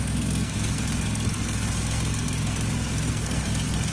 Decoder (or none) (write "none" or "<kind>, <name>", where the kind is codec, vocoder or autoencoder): codec, SNAC